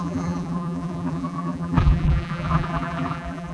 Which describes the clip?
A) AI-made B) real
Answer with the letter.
A